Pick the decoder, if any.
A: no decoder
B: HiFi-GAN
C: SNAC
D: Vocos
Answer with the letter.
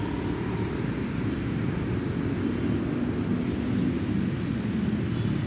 A